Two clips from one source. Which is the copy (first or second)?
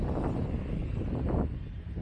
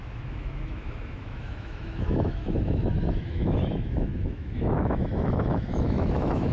second